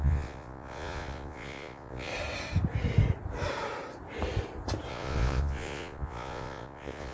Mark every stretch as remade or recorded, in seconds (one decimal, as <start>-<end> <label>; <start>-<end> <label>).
0.0-2.1 remade; 2.1-4.9 recorded; 4.9-7.1 remade